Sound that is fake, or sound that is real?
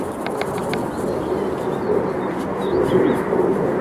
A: real